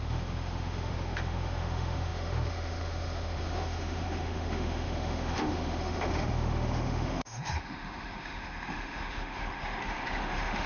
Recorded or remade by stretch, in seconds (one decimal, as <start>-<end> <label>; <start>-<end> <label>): 0.0-10.7 remade

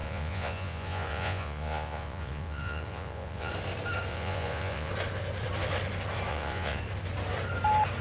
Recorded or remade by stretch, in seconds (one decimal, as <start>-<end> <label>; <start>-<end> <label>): 0.0-3.5 remade; 3.5-4.1 recorded; 4.1-4.9 remade; 4.9-6.3 recorded; 6.3-6.8 remade; 6.8-8.0 recorded

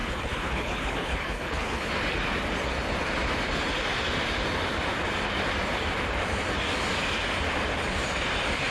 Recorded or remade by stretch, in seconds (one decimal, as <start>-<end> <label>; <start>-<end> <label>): 0.0-1.9 remade; 1.9-8.7 recorded

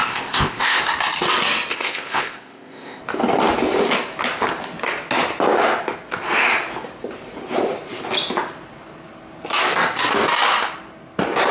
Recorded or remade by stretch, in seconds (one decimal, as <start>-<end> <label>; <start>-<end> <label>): 0.0-0.8 remade; 0.8-1.7 recorded; 1.7-3.0 remade; 3.0-11.5 recorded

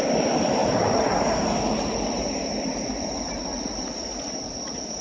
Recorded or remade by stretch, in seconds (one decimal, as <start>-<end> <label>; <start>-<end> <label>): 0.0-5.0 recorded

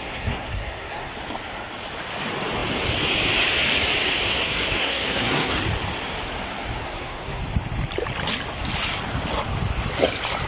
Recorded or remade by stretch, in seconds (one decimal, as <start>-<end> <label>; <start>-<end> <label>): 0.0-1.1 remade; 1.1-4.3 recorded; 4.3-5.5 remade; 5.5-6.8 recorded; 6.8-7.4 remade; 7.4-10.5 recorded

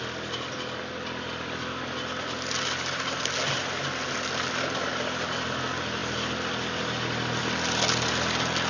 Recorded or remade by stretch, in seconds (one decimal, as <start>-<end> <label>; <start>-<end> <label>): 0.0-8.7 recorded